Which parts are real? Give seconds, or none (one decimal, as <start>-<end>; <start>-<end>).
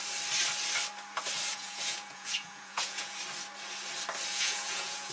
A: 0.0-1.5; 3.2-4.3